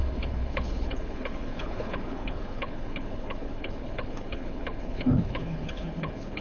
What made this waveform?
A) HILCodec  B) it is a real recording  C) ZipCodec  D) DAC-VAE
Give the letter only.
A